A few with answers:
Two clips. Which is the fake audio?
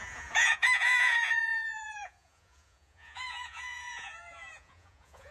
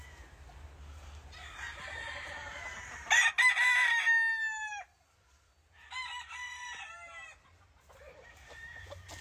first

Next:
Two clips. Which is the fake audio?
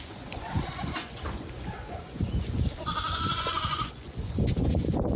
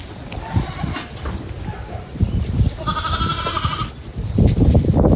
first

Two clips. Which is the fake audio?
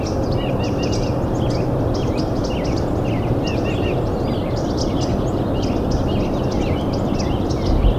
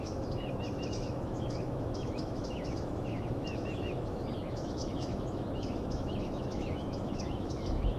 second